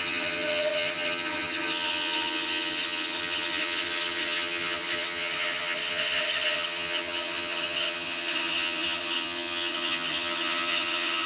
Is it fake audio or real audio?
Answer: fake